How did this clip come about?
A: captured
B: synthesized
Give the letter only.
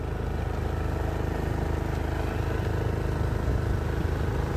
A